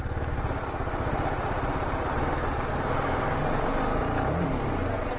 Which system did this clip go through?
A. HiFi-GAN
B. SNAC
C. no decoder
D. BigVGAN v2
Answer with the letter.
C